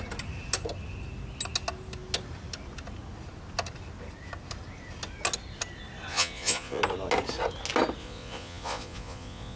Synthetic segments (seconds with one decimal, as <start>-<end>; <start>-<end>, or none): 6.1-6.8; 8.0-9.6